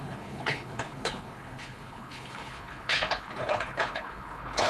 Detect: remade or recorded remade